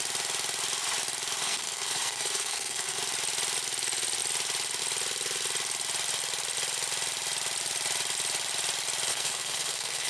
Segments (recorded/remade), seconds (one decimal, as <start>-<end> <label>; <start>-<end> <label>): 0.0-1.4 recorded; 1.4-3.0 remade; 3.0-9.1 recorded; 9.1-10.1 remade